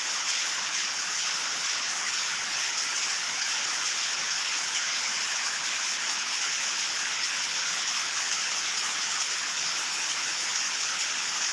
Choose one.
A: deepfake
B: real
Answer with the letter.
A